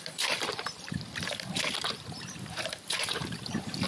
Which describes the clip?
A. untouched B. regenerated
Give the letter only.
B